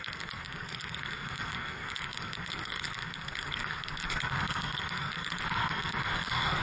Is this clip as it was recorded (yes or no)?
no